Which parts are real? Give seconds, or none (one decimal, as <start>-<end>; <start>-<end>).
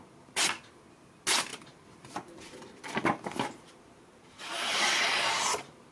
0.0-5.9